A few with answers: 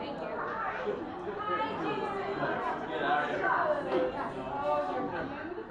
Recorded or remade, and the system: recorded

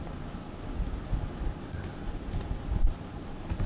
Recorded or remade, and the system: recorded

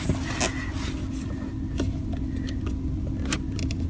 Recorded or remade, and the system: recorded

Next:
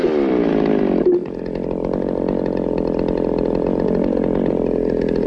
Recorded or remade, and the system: recorded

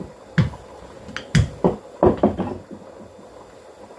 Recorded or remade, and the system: recorded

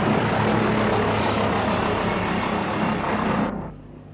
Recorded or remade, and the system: recorded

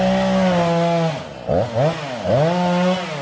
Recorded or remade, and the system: recorded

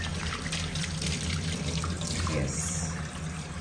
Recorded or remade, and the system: recorded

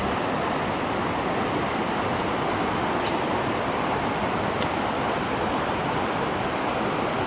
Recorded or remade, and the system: recorded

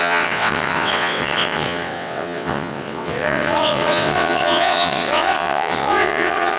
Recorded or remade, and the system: remade, vocoder, WaveNeXt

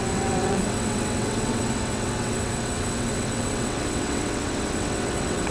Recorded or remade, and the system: remade, vocoder, WaveNeXt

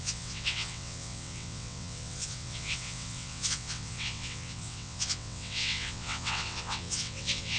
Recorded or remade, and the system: remade, vocoder, WaveNeXt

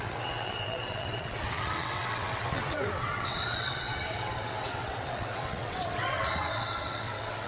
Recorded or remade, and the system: remade, vocoder, WaveNeXt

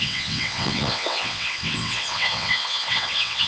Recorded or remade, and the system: remade, vocoder, WaveNeXt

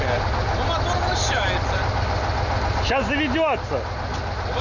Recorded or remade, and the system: recorded